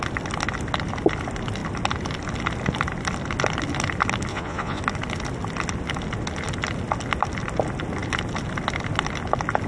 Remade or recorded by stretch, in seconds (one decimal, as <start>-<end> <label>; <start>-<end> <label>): 0.0-4.3 recorded; 4.3-4.8 remade; 4.8-9.7 recorded